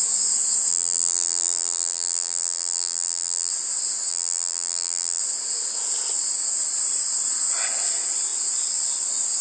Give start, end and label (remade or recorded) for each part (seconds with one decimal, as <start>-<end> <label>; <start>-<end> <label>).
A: 0.0-0.7 recorded; 0.7-3.5 remade; 3.5-4.1 recorded; 4.1-5.2 remade; 5.2-9.4 recorded